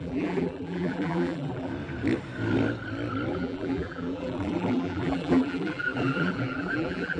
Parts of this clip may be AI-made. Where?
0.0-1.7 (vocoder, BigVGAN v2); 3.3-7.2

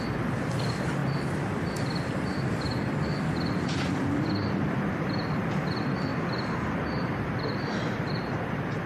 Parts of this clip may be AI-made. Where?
0.0-8.9 (vocoder, BigVGAN v2)